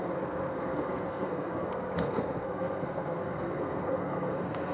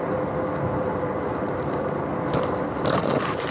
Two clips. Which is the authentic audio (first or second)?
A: second